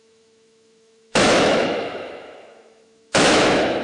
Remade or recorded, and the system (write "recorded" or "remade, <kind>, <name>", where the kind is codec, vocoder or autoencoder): remade, autoencoder, DAC-VAE